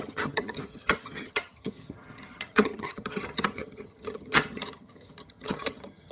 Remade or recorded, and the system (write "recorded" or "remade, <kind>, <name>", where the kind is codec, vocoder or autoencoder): remade, vocoder, HiFi-GAN